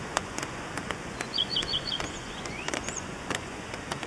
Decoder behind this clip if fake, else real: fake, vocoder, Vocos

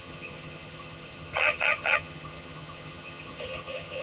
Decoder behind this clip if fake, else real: fake, vocoder, HiFi-GAN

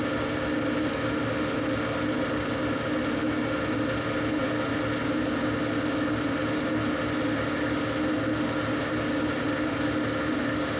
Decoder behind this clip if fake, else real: real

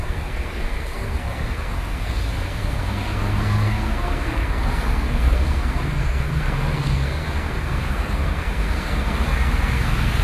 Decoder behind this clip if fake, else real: fake, codec, SNAC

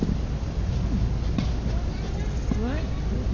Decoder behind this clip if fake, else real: real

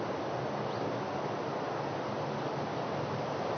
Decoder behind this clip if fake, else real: real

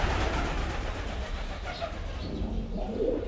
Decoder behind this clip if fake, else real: real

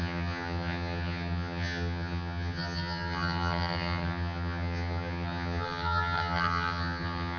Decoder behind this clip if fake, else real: fake, vocoder, HiFi-GAN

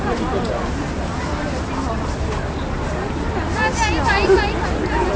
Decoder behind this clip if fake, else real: real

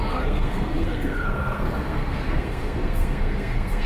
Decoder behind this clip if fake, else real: fake, codec, SNAC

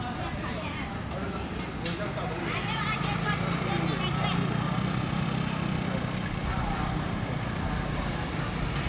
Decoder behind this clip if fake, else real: real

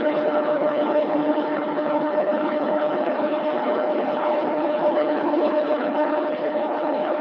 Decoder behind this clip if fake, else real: fake, codec, HILCodec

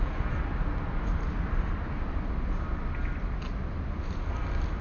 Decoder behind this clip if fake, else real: real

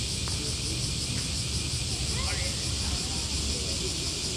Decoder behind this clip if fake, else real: real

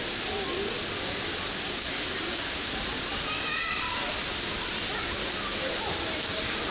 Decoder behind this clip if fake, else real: real